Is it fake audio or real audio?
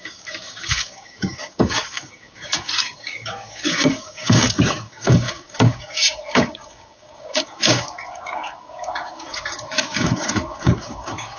fake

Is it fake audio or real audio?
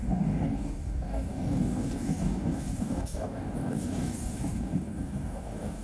fake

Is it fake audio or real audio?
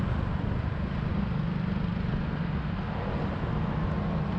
real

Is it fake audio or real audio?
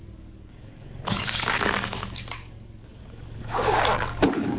fake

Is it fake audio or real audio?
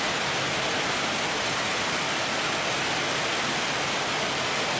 real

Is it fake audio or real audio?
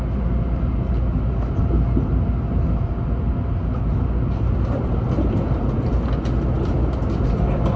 real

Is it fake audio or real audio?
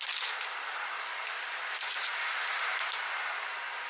real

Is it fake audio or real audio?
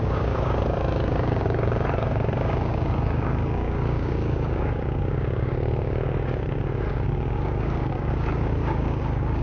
fake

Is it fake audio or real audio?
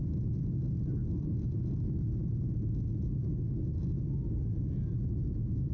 real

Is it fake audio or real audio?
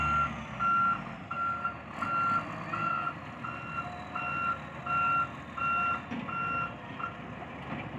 real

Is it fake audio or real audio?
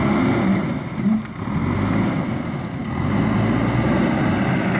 real